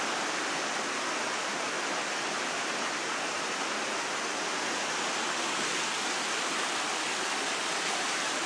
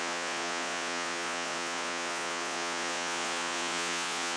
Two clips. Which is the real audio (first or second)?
first